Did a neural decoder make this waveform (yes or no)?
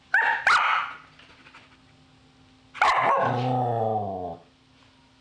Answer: no